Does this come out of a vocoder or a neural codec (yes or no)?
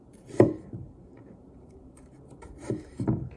yes